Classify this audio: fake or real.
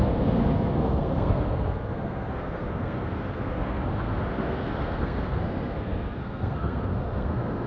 fake